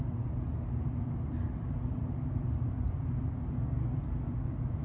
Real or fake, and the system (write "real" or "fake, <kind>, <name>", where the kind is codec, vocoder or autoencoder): real